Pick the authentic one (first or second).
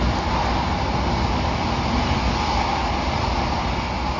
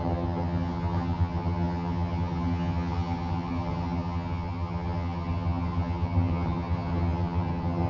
first